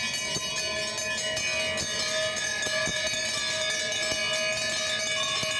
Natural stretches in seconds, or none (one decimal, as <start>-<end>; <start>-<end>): 0.0-5.6